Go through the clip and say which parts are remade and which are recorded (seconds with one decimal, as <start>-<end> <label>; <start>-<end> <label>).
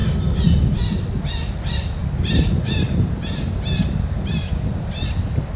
0.0-5.6 recorded